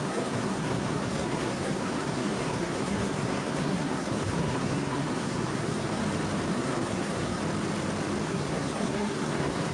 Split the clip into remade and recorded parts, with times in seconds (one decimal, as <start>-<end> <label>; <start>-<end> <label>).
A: 0.0-6.0 remade; 6.0-6.5 recorded; 6.5-7.4 remade; 7.4-8.3 recorded; 8.3-9.7 remade